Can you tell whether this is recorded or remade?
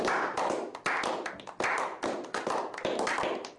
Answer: recorded